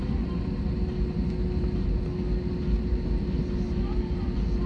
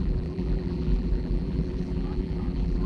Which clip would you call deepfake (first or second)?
second